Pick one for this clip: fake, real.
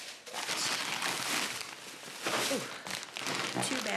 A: real